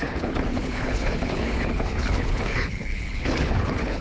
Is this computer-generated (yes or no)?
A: yes